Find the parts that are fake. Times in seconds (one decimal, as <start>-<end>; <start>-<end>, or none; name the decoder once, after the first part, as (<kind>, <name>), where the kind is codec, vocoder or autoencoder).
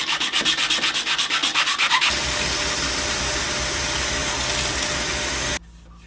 none